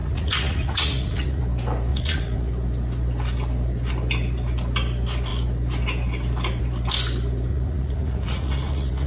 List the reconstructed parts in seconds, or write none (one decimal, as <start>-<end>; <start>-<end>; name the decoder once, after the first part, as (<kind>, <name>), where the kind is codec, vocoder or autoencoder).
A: 0.0-1.4 (vocoder, Vocos); 1.9-2.5; 7.5-9.1